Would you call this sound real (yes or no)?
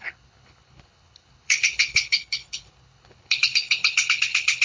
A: no